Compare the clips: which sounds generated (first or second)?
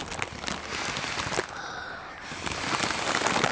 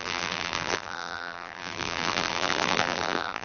second